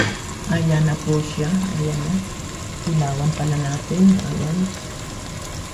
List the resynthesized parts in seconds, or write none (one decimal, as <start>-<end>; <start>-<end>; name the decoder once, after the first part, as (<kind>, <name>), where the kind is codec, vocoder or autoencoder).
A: none